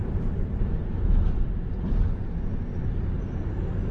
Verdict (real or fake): real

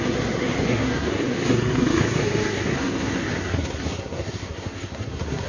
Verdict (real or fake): fake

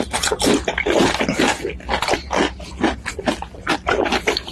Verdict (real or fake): real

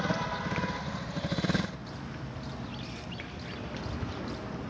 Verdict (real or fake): real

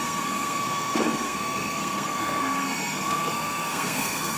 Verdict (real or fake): fake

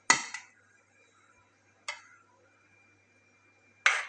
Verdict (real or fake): real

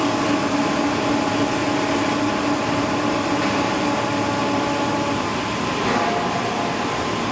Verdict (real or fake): real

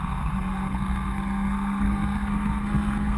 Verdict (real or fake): fake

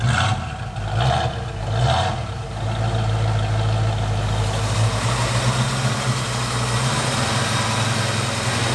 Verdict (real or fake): real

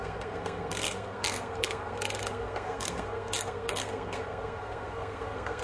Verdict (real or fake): fake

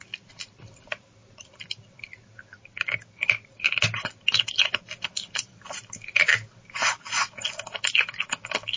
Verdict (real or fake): real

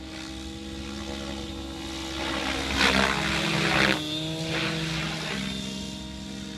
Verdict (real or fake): real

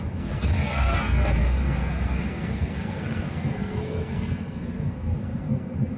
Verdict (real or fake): fake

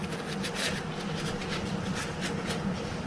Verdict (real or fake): real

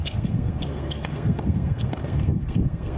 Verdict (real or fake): fake